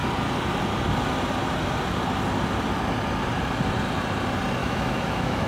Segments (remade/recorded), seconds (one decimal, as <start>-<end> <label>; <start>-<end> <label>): 0.0-4.6 recorded; 4.6-5.5 remade